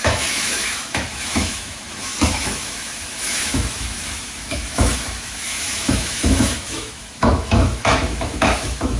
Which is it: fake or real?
fake